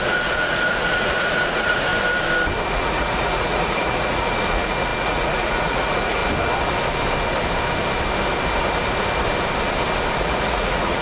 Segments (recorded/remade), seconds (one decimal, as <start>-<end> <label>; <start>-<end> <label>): 0.0-1.9 remade; 1.9-2.7 recorded; 2.7-6.2 remade; 6.2-10.2 recorded; 10.2-11.0 remade